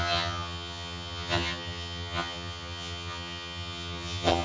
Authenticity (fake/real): fake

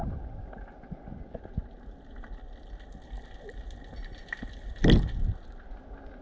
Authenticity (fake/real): real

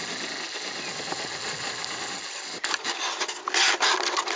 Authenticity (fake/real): fake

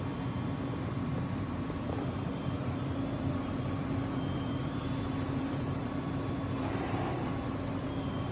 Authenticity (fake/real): fake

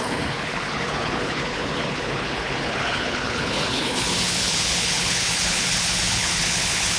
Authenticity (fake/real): fake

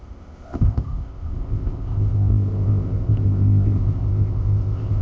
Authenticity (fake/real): fake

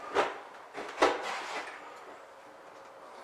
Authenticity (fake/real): real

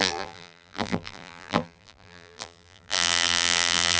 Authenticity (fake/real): fake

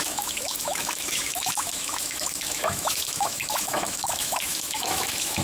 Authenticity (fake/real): fake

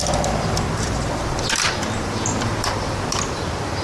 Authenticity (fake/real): fake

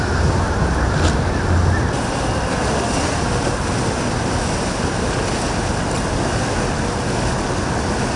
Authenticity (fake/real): real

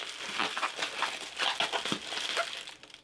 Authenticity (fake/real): real